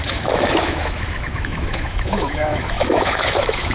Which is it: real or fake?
fake